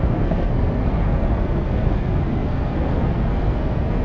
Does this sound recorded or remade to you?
remade